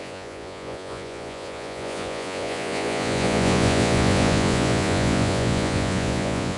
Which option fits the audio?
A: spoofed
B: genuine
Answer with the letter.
A